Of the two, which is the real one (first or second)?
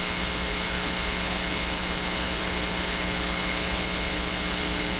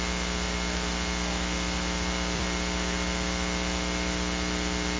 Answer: second